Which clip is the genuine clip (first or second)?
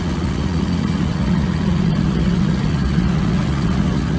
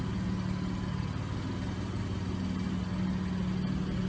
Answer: second